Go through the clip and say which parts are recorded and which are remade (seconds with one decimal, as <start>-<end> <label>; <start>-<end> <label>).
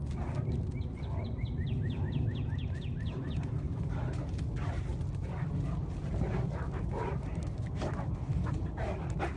0.0-9.4 recorded